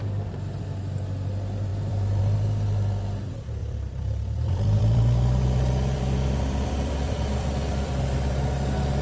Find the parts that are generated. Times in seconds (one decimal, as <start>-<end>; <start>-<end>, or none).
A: 1.7-2.2; 3.6-7.9